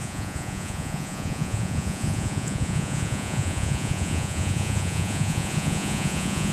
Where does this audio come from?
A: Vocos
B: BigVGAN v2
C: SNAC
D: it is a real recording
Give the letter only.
A